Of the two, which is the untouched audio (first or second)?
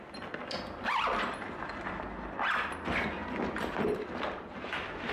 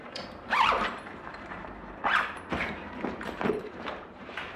first